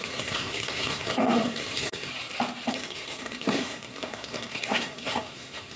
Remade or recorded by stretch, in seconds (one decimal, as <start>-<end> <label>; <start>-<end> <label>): 0.0-2.1 remade; 2.1-2.7 recorded; 2.7-5.8 remade